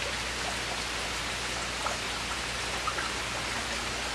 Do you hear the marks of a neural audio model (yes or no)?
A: no